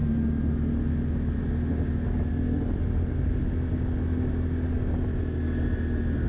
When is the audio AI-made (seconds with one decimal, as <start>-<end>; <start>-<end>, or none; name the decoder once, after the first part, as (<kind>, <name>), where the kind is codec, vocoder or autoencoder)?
none